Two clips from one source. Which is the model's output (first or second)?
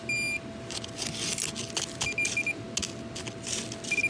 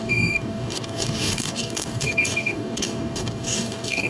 second